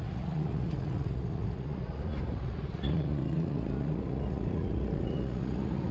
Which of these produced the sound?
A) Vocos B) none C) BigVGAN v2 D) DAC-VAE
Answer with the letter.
A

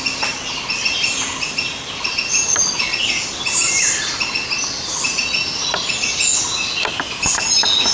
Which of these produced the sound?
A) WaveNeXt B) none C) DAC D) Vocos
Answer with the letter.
B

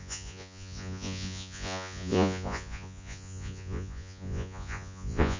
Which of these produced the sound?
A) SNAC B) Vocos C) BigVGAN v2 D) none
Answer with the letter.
B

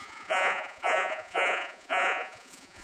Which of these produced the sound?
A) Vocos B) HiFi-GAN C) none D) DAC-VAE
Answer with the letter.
A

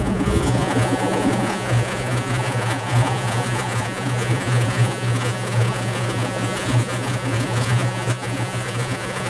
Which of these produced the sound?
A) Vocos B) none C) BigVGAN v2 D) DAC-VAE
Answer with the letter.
A